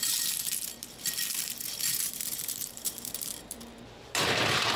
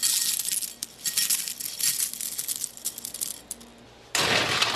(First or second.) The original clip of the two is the second